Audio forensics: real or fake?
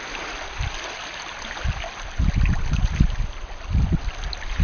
real